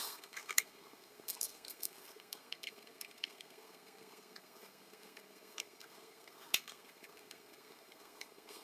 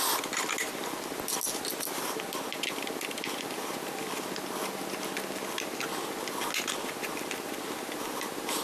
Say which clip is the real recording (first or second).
second